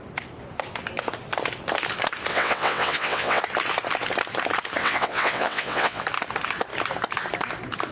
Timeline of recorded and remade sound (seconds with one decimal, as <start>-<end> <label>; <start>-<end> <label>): 0.0-2.3 recorded; 2.3-3.4 remade; 3.4-4.8 recorded; 4.8-6.0 remade; 6.0-7.9 recorded